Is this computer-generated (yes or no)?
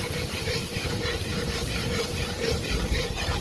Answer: yes